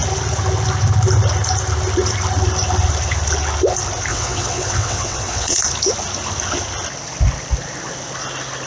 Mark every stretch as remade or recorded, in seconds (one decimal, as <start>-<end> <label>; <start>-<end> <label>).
0.0-4.1 recorded; 4.1-5.6 remade; 5.6-8.7 recorded